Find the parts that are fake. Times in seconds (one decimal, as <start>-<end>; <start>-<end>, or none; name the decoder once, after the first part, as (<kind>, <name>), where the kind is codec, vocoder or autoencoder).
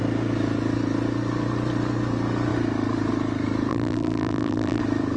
3.7-4.8 (vocoder, BigVGAN v2)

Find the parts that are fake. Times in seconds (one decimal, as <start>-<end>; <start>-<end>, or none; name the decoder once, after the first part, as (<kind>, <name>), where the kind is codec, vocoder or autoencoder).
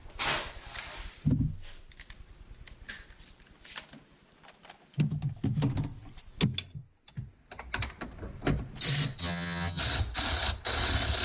9.2-9.8 (vocoder, HiFi-GAN)